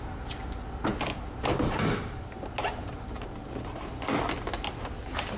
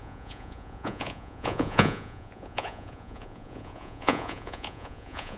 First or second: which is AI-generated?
second